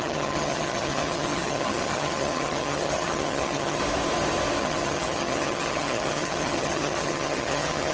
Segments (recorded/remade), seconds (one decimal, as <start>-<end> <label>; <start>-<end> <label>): 0.0-3.8 remade; 3.8-4.6 recorded; 4.6-7.9 remade